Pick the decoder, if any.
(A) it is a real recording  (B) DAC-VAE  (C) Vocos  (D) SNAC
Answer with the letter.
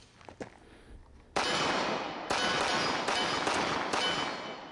A